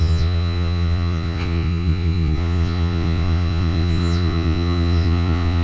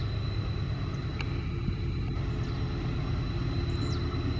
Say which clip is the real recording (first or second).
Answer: second